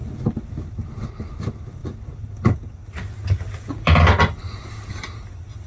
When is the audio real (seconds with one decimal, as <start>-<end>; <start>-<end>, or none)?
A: 0.0-5.7